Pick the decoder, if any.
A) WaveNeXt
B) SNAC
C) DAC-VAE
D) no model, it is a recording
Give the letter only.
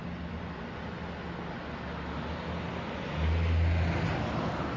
D